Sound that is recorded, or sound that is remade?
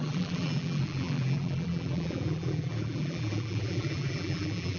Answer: remade